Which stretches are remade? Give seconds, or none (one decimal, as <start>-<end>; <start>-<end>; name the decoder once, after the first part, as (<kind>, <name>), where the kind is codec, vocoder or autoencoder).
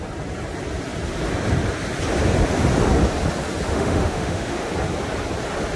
3.7-4.7 (autoencoder, DAC-VAE)